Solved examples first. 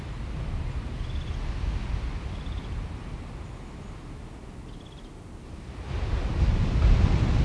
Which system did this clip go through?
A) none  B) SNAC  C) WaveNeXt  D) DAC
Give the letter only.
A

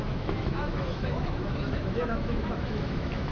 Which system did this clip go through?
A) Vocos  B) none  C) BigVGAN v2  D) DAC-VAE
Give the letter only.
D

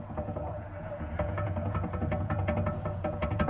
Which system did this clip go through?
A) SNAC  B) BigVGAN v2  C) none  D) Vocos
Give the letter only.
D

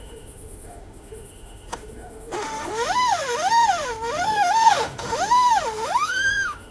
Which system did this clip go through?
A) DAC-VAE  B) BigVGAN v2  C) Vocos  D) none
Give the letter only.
A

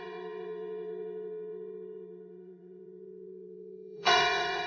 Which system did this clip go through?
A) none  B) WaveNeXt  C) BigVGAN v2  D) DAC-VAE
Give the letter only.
B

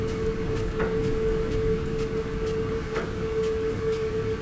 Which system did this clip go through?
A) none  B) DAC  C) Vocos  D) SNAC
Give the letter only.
B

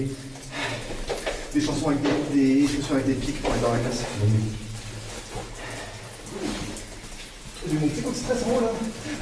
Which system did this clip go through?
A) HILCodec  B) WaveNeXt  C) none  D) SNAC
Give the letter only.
C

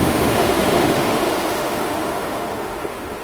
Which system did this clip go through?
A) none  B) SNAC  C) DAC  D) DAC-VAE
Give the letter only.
D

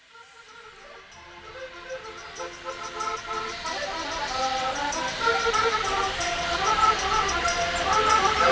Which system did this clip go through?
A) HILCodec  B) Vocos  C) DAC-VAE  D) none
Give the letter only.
D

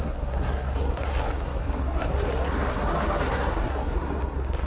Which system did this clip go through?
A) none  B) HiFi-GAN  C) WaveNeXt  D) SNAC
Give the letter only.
D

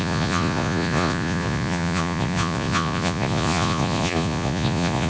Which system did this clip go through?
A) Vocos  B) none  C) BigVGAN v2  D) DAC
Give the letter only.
A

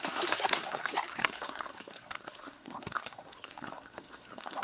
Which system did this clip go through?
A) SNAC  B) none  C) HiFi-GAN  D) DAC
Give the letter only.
A